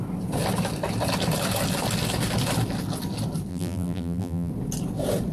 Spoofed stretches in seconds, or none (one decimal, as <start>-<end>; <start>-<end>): 3.5-4.5